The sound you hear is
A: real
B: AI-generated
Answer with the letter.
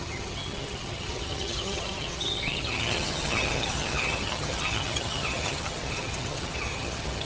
B